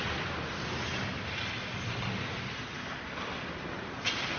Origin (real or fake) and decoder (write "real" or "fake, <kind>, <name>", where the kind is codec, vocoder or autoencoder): real